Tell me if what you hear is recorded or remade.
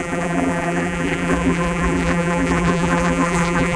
remade